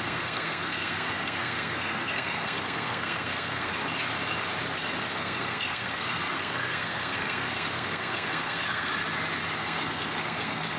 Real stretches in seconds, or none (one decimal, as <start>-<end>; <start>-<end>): 3.7-5.1; 8.9-9.6